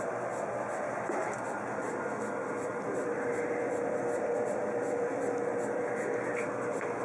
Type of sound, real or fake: real